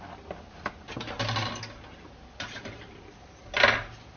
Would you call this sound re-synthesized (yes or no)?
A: no